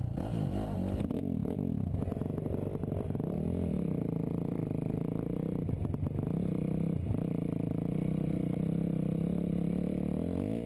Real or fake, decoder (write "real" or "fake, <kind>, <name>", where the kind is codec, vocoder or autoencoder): real